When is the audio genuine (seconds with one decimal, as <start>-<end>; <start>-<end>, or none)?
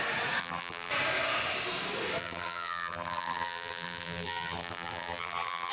0.0-0.4; 0.9-2.2